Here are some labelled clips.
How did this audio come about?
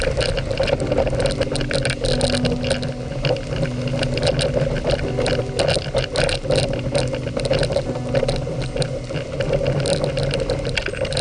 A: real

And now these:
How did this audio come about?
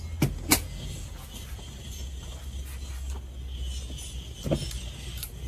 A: real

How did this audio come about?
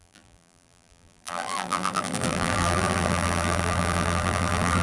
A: fake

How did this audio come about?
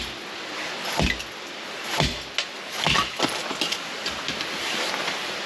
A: real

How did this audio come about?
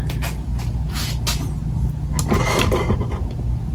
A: real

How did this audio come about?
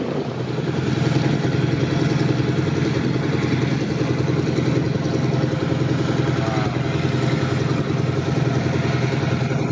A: real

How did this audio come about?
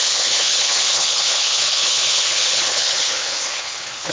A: fake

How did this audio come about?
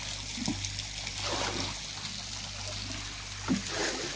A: real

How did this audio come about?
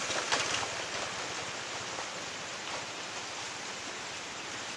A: real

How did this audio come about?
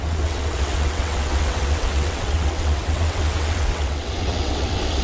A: fake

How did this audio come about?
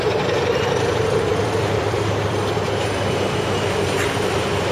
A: fake